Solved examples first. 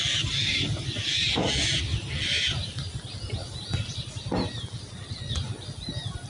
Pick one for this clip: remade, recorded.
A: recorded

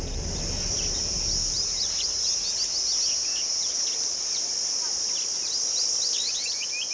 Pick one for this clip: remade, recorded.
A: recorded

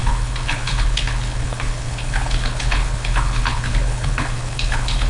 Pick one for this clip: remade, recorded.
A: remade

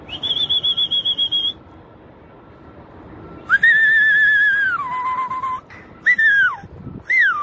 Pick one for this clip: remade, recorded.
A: recorded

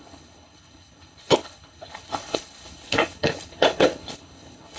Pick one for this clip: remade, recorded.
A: remade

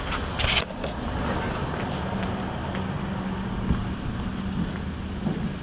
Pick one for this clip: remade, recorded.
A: recorded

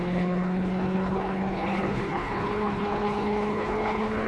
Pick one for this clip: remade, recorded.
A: remade